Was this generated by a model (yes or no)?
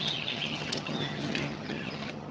yes